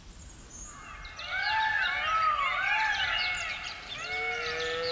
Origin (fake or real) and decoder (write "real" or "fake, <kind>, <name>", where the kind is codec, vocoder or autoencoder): real